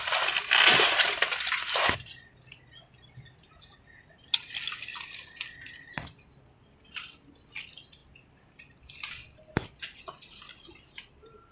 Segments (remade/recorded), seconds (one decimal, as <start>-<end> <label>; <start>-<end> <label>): 0.0-11.5 recorded